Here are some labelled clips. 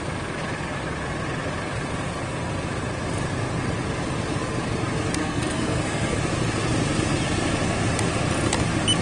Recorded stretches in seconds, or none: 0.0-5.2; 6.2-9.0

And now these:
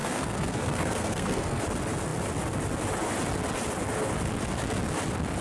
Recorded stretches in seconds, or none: 1.6-5.4

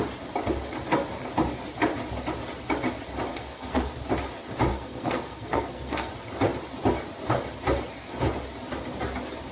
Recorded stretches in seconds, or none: 0.0-3.3; 3.9-4.7; 6.1-9.5